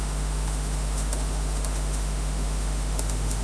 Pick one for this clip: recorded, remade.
remade